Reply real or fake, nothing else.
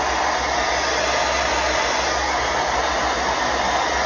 real